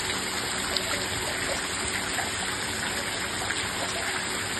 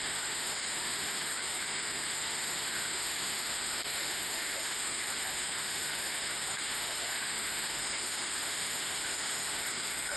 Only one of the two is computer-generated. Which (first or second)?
second